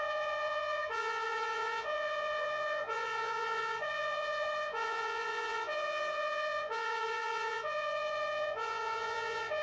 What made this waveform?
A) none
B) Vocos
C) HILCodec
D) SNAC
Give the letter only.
B